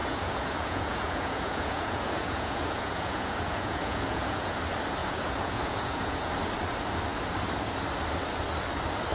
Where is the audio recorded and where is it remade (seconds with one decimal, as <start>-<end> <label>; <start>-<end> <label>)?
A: 0.0-4.6 remade; 4.6-5.0 recorded; 5.0-6.3 remade; 6.3-9.1 recorded